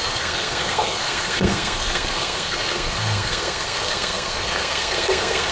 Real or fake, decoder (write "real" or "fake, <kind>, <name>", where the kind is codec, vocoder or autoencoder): fake, codec, SNAC